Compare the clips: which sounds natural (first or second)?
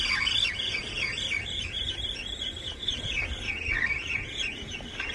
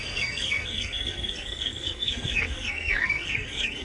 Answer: first